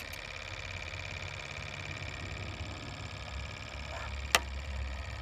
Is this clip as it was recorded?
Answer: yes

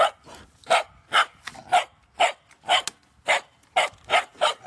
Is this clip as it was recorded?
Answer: yes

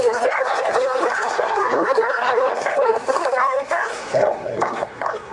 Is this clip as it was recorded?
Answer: no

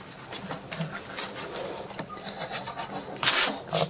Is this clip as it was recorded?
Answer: yes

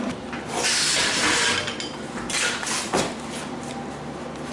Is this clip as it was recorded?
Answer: yes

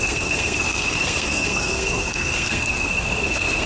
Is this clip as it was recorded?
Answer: no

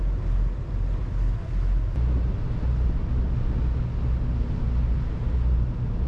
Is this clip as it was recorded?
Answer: yes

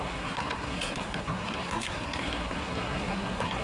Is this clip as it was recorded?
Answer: no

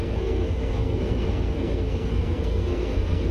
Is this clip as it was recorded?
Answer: no